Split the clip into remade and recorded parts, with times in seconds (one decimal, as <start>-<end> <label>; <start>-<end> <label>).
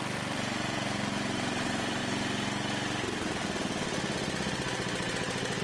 0.0-2.0 remade; 2.0-5.6 recorded